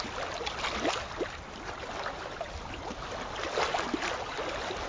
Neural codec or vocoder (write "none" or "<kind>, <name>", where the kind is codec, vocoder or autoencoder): none